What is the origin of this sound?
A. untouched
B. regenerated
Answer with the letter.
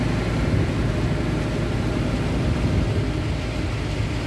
A